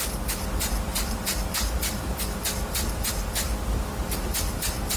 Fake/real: real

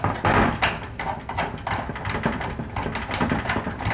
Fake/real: real